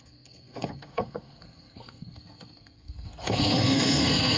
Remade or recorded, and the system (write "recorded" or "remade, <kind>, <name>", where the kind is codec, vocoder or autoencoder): remade, codec, SNAC